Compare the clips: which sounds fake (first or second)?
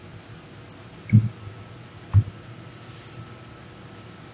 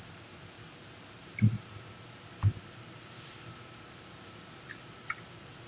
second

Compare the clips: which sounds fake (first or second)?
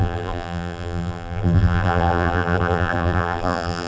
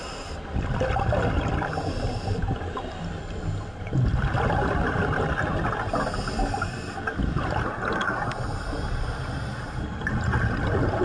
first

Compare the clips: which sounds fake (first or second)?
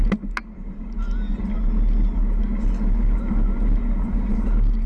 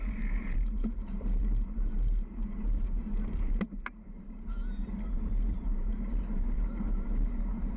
second